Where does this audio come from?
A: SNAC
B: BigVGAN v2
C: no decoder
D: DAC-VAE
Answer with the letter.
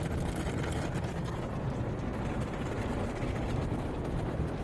C